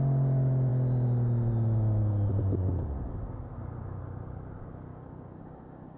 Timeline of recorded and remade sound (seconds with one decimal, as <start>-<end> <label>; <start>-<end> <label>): 0.0-4.9 recorded; 4.9-6.0 remade